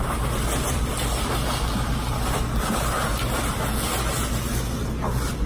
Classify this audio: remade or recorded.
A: recorded